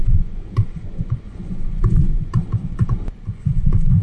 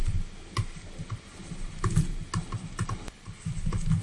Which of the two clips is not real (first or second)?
first